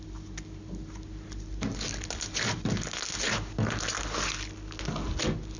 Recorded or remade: recorded